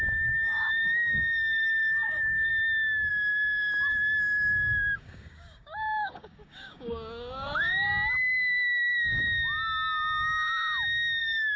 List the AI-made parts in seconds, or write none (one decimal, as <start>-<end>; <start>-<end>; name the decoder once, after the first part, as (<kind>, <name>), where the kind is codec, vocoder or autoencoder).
0.0-2.5 (codec, DAC); 3.1-7.9; 11.2-11.6

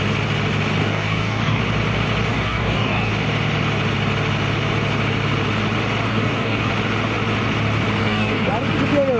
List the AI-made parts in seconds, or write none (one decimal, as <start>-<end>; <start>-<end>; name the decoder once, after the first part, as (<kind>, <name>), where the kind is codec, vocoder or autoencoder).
0.8-1.6 (codec, DAC); 2.3-3.1; 6.1-6.7; 8.0-8.5

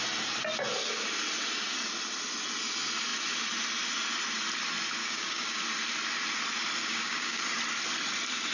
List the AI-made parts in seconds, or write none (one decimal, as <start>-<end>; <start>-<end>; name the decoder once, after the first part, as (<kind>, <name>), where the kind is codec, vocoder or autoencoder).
5.0-5.6 (codec, DAC); 6.8-7.4